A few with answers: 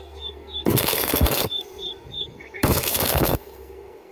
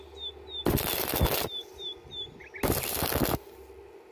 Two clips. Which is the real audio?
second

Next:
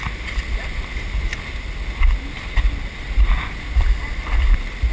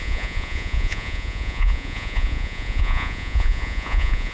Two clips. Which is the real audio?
first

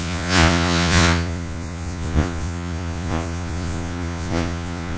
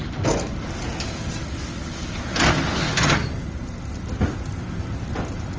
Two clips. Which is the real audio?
second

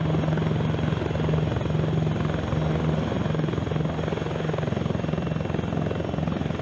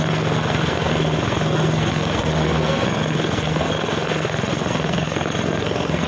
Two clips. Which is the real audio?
first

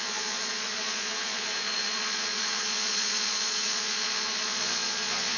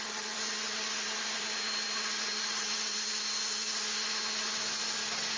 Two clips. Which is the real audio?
second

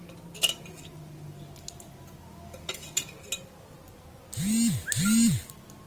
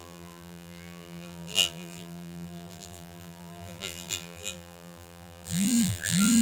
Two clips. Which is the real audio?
first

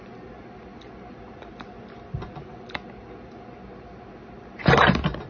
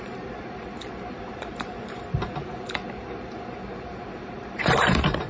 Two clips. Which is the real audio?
first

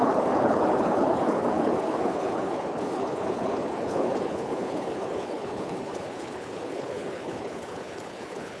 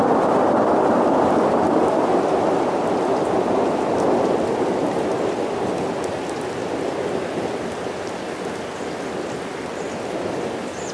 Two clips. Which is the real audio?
second